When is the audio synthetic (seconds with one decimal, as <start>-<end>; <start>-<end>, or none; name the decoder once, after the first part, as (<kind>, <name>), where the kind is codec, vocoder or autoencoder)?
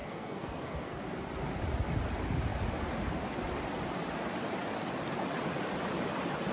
0.0-1.0 (codec, SNAC)